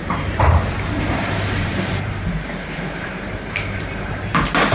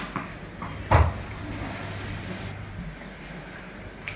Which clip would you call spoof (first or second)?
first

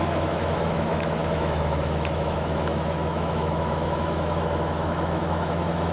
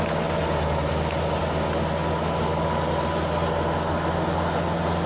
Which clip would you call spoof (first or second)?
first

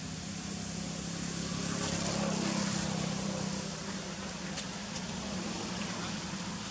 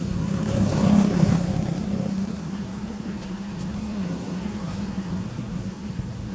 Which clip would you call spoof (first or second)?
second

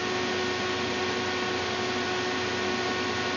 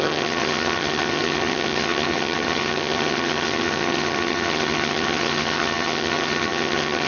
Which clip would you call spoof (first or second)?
second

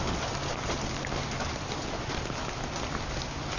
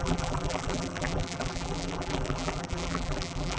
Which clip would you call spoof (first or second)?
second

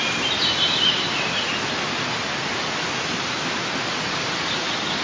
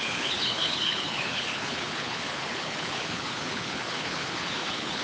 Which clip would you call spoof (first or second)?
second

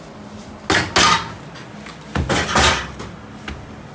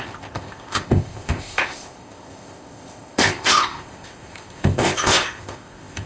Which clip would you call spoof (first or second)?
second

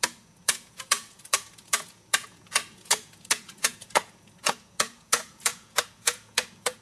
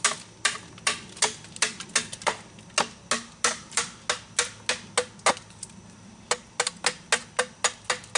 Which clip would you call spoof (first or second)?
first